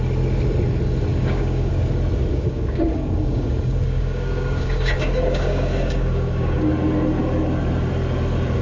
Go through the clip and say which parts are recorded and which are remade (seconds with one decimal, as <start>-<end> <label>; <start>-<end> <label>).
0.0-1.1 recorded; 1.1-1.7 remade; 1.7-2.3 recorded; 2.3-6.7 remade; 6.7-8.6 recorded